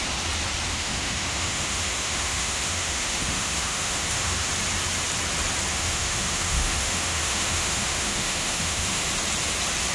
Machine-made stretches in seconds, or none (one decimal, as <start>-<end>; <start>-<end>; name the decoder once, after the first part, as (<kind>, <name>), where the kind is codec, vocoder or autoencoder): 0.7-4.5 (autoencoder, DAC-VAE); 5.7-9.0